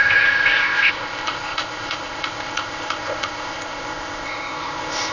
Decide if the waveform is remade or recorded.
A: remade